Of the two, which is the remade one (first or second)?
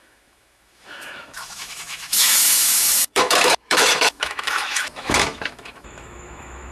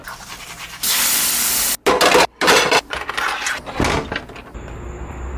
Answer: first